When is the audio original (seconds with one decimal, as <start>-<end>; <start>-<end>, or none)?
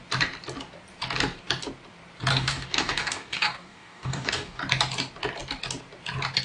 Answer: 0.0-2.3; 4.6-6.4